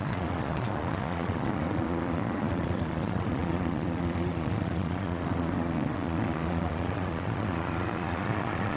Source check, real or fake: fake